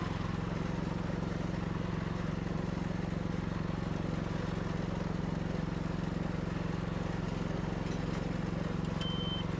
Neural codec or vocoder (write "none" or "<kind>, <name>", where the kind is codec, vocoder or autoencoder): none